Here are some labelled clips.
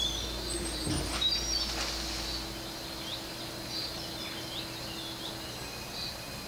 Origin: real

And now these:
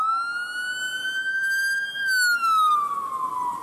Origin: real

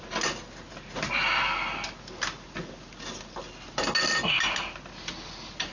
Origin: real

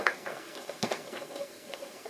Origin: fake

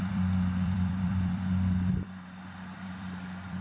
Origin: fake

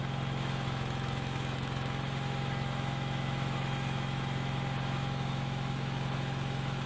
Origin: fake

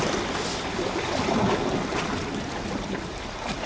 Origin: real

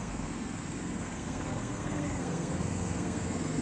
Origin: fake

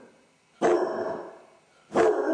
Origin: real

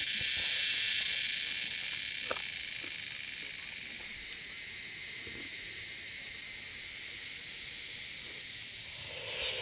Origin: real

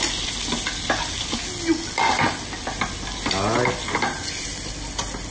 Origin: real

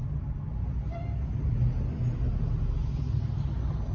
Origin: real